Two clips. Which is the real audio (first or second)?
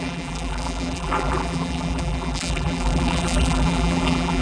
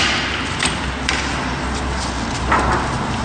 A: second